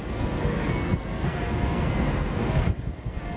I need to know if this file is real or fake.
fake